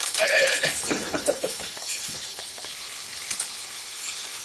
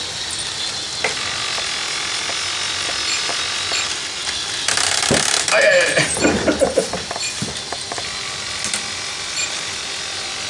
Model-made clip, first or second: first